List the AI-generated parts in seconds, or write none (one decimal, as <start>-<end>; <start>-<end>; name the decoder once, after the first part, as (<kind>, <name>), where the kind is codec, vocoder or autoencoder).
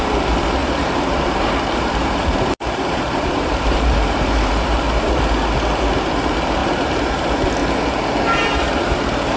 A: 0.6-5.2 (vocoder, BigVGAN v2); 6.6-7.1